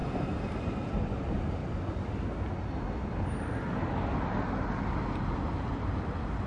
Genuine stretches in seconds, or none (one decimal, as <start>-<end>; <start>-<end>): 0.6-6.5